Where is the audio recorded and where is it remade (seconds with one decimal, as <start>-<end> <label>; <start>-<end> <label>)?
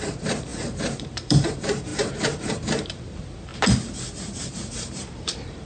0.0-3.5 remade; 3.5-4.4 recorded; 4.4-5.7 remade